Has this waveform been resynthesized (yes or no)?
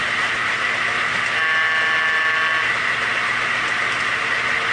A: no